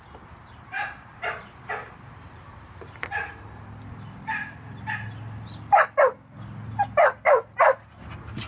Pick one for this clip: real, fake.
real